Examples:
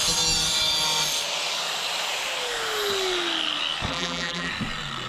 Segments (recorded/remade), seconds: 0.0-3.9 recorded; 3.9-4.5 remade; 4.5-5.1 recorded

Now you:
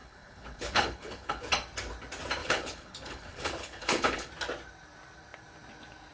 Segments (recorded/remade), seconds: 0.0-1.5 remade; 1.5-2.4 recorded; 2.4-4.3 remade; 4.3-6.1 recorded

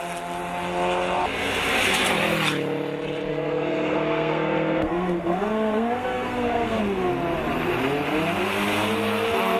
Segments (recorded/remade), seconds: 0.0-3.3 recorded; 3.3-6.8 remade; 6.8-9.6 recorded

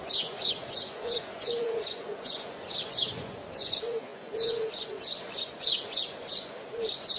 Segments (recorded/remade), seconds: 0.0-7.2 remade